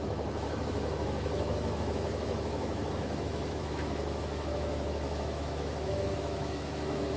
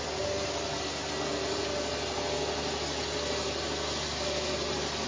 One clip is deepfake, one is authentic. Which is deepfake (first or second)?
first